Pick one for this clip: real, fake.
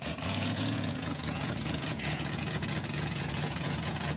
fake